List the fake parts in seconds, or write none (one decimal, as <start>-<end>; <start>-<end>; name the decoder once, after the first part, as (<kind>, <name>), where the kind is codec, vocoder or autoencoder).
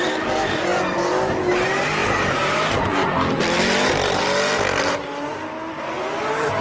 none